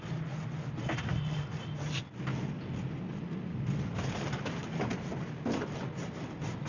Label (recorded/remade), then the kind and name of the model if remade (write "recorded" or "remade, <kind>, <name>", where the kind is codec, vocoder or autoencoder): recorded